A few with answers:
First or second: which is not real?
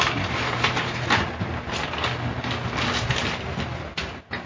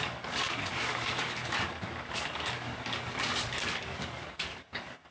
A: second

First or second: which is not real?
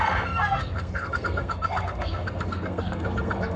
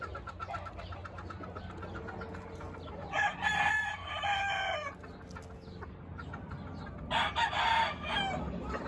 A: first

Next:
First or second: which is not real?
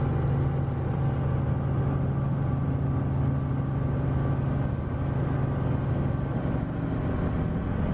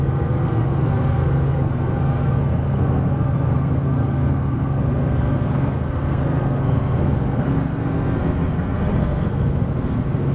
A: second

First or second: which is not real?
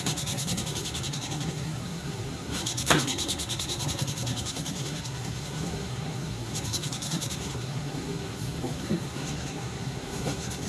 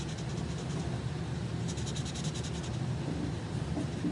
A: first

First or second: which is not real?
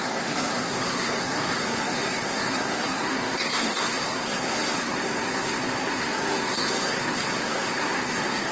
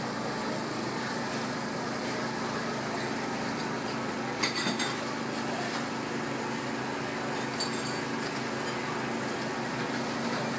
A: first